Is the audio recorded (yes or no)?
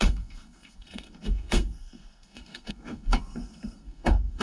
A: no